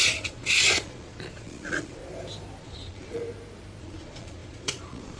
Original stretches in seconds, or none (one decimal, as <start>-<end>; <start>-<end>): 2.0-2.6; 3.2-3.8